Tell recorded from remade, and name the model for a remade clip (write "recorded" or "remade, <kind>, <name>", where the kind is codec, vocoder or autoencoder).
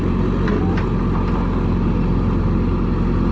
recorded